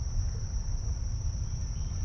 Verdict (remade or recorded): recorded